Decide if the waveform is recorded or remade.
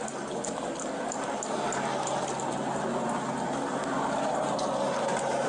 recorded